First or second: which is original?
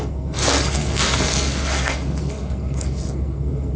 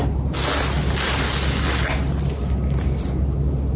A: second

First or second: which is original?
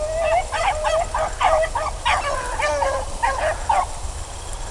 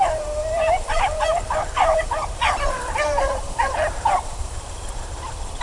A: first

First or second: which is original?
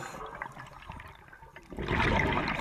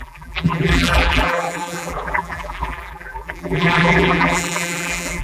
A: first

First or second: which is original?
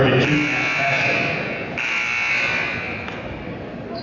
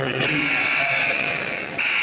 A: first